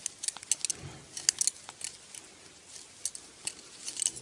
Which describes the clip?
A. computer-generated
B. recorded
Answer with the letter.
B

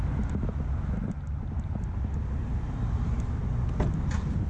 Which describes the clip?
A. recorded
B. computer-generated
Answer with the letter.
A